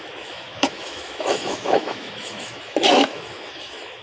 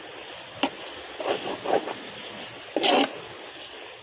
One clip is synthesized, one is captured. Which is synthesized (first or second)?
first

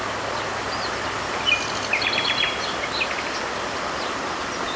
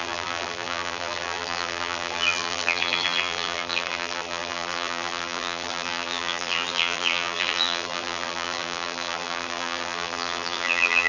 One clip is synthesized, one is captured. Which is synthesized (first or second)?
second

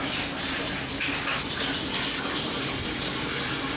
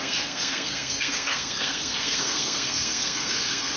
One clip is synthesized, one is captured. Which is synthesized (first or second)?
second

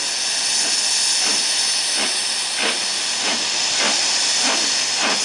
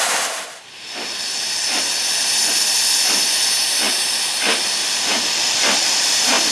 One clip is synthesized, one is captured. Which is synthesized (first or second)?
second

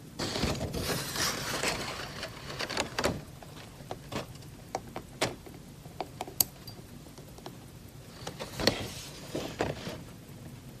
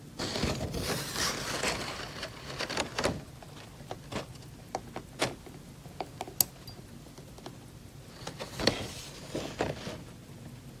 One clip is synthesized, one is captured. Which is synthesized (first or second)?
first